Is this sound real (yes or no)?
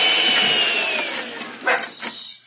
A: yes